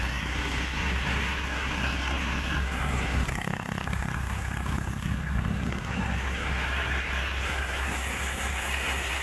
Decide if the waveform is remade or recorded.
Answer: remade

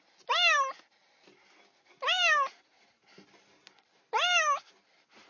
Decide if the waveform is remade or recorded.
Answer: recorded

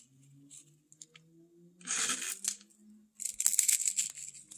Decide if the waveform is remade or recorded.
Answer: recorded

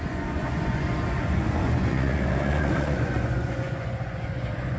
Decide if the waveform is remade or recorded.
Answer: remade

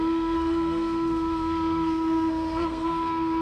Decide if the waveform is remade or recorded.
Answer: remade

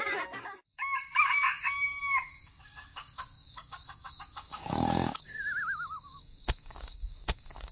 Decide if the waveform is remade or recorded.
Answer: remade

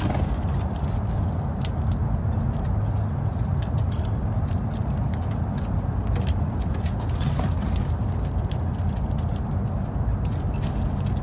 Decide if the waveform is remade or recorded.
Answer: recorded